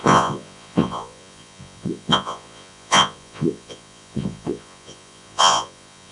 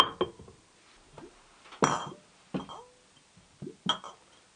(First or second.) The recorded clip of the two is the second